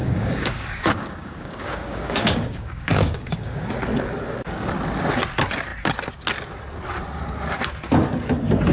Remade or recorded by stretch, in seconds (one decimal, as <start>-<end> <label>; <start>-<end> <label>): 0.0-3.7 remade; 3.7-8.7 recorded